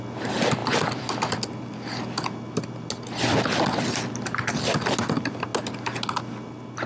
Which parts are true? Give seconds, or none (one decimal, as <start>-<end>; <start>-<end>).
0.0-6.9